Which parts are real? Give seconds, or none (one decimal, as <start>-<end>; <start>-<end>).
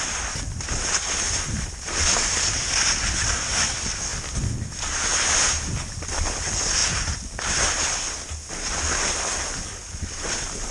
0.0-10.7